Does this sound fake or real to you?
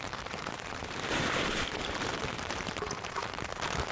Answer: fake